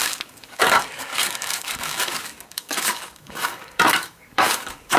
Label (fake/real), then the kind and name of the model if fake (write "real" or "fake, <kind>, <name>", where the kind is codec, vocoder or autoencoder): fake, codec, DAC